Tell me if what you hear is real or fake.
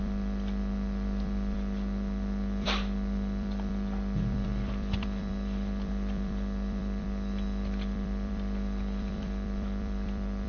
fake